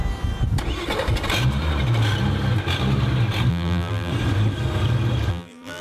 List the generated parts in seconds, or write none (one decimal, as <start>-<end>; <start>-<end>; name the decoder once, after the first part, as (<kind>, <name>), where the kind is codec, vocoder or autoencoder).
3.5-4.1 (vocoder, BigVGAN v2); 5.3-5.8